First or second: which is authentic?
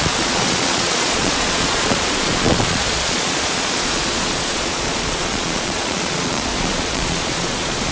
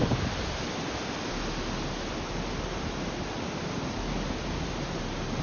second